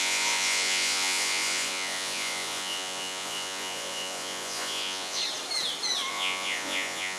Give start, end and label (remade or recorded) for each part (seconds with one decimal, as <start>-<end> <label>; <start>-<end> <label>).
0.0-5.2 remade; 5.2-6.1 recorded; 6.1-7.2 remade